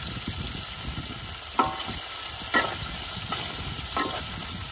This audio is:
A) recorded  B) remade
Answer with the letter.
A